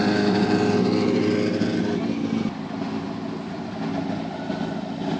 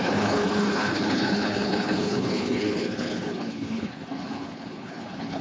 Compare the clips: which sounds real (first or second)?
first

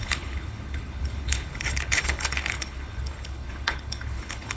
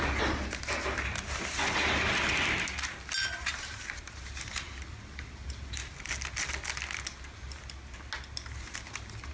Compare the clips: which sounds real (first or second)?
second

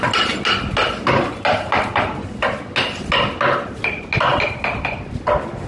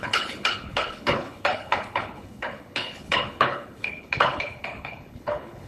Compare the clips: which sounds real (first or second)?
first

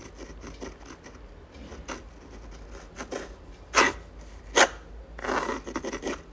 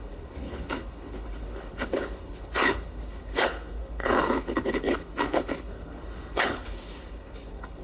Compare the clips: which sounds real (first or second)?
first